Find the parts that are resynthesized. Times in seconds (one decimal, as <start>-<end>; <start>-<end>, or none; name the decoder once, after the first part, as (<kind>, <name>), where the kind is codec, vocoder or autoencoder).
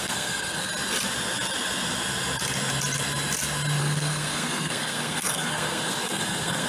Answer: 0.0-0.7 (codec, SNAC); 3.8-6.7